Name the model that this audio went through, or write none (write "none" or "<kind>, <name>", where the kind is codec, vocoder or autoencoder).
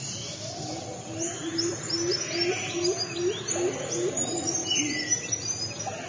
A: none